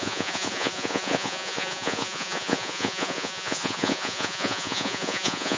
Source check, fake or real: fake